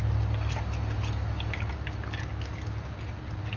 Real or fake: real